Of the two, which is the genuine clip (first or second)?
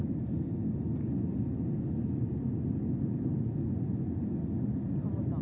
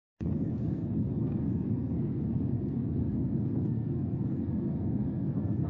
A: first